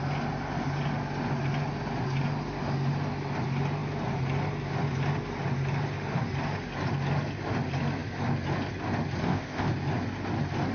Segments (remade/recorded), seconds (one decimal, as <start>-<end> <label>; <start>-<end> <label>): 0.0-9.2 recorded; 9.2-9.7 remade; 9.7-10.7 recorded